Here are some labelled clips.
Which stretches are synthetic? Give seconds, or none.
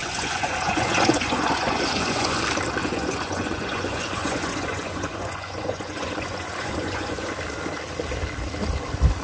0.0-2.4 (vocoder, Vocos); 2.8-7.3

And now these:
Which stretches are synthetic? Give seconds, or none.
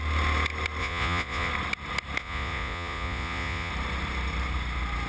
0.8-1.5 (vocoder, Vocos); 2.2-3.7